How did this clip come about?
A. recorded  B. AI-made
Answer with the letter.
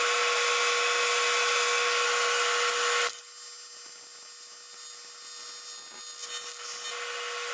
A